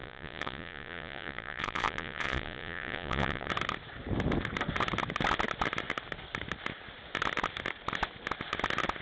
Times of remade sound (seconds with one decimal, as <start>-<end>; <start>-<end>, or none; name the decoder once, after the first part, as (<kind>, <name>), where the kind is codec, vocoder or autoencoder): 0.0-3.5 (vocoder, Vocos)